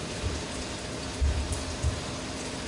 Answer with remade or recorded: remade